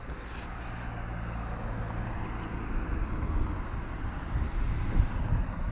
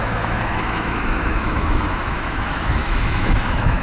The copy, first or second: second